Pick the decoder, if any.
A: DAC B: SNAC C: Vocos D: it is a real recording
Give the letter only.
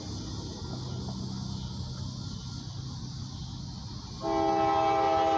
D